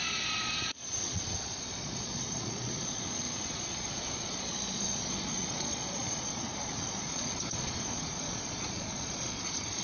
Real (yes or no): no